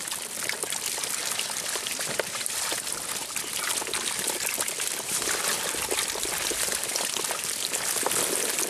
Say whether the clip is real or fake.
real